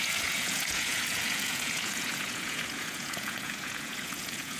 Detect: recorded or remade remade